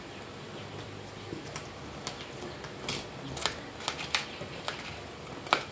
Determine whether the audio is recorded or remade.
recorded